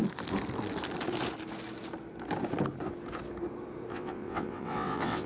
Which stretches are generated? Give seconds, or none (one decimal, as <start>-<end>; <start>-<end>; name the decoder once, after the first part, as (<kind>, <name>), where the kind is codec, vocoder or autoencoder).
3.9-5.3 (vocoder, WaveNeXt)